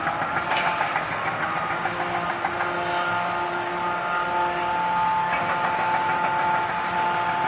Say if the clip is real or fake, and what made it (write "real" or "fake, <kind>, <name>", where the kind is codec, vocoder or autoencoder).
real